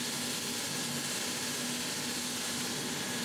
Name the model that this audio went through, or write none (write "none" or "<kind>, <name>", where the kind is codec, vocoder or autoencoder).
none